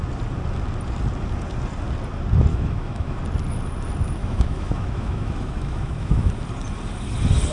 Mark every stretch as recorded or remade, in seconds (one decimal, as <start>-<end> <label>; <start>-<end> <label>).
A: 0.0-2.5 recorded; 2.5-3.2 remade; 3.2-4.2 recorded; 4.2-6.3 remade; 6.3-7.5 recorded